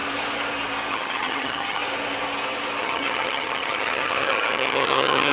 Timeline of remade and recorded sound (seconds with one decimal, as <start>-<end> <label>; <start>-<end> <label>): 0.0-0.9 recorded; 0.9-1.8 remade; 1.8-2.8 recorded; 2.8-5.3 remade